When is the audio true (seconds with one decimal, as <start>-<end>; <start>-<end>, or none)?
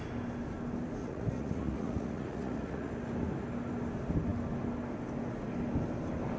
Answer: 0.0-1.0; 2.9-6.4